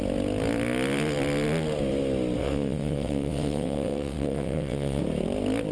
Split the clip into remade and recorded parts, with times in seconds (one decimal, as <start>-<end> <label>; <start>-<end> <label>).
0.0-2.4 recorded; 2.4-5.0 remade; 5.0-5.7 recorded